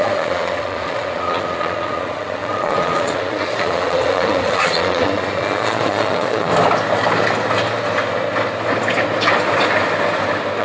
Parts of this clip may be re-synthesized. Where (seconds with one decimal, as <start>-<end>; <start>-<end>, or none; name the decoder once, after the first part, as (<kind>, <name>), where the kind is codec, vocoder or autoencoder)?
0.0-6.5 (vocoder, Vocos)